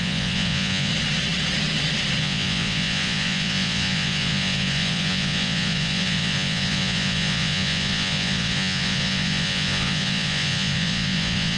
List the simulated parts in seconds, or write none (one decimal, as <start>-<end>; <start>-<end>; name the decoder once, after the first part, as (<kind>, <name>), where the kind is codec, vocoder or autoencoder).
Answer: 0.0-0.9 (vocoder, Vocos); 2.2-11.6